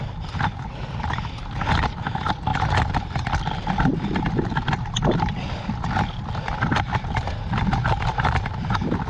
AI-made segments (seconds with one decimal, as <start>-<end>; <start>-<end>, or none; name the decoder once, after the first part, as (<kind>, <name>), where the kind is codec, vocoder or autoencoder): none